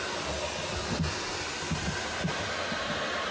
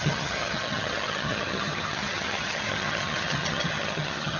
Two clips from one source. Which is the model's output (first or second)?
second